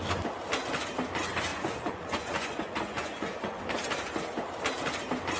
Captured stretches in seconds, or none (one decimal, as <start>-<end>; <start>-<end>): 0.0-1.5; 3.6-5.4